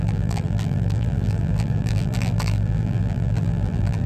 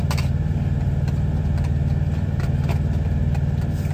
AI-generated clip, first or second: first